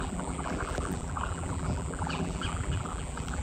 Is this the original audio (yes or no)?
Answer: no